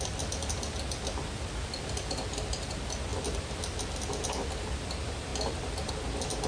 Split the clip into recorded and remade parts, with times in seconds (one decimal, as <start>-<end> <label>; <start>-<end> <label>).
0.0-6.5 recorded